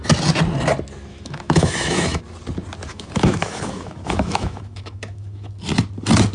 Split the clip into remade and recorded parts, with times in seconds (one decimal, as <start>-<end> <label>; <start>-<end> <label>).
0.0-1.1 recorded; 1.1-2.2 remade; 2.2-2.9 recorded; 2.9-5.5 remade; 5.5-6.3 recorded